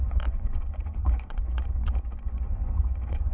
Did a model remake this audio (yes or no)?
yes